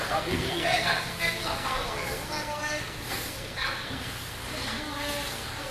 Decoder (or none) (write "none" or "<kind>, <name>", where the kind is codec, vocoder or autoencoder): codec, SNAC